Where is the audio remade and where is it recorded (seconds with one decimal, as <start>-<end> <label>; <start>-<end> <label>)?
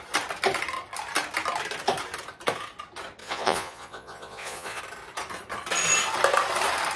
0.0-3.2 recorded; 3.2-4.8 remade; 4.8-7.0 recorded